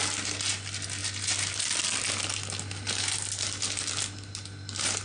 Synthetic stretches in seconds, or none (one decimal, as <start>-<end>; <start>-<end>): none